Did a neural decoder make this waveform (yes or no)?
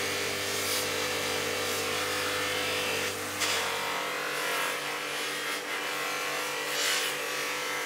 no